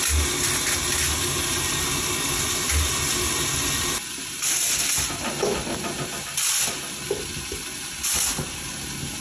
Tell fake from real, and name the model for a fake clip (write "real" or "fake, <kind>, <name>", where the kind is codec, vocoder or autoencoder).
real